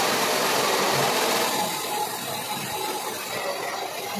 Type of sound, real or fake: real